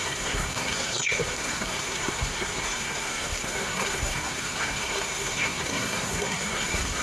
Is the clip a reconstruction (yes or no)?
yes